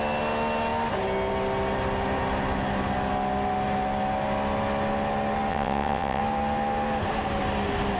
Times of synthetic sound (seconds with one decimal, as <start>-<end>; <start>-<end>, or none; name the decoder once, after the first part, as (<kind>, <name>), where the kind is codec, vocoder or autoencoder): 5.5-6.2 (vocoder, WaveNeXt)